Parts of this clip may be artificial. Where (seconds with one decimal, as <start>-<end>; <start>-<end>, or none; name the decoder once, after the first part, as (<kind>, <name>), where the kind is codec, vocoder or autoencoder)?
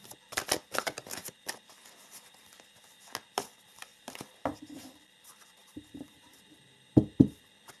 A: 1.2-1.7 (vocoder, BigVGAN v2); 5.6-7.3